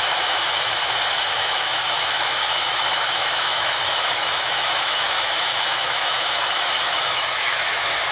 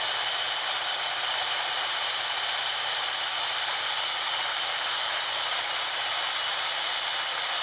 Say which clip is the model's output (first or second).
first